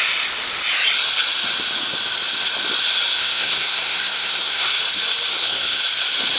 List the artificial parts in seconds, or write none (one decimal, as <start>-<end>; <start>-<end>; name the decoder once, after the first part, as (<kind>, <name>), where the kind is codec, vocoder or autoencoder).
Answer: 3.2-4.8 (codec, SNAC); 5.3-5.8